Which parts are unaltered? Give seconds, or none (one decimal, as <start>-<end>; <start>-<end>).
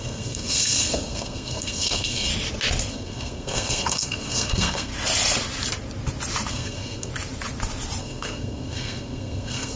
2.3-2.9; 4.9-6.5; 7.1-8.0